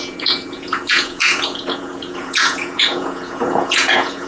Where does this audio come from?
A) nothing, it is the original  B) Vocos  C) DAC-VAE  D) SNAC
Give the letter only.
B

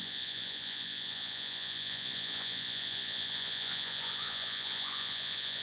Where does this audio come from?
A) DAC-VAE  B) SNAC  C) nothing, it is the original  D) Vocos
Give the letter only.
D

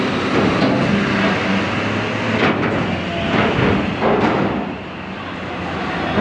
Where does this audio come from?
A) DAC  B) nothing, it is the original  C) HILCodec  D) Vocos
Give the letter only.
B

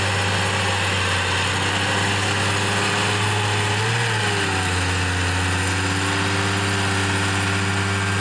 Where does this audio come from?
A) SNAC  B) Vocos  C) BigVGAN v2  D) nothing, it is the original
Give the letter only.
D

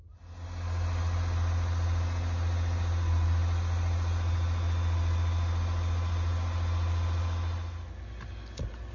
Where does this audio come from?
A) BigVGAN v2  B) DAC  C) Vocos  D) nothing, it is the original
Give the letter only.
D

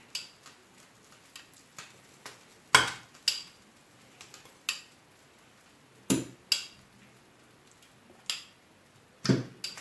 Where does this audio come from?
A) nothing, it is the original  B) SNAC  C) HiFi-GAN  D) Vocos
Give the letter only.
A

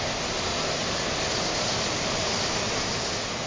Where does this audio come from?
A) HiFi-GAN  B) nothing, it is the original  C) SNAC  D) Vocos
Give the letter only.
B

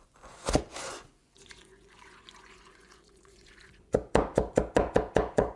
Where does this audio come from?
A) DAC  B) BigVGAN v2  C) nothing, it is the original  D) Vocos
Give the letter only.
D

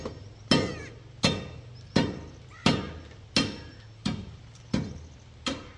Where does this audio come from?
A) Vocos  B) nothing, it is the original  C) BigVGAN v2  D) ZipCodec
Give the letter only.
B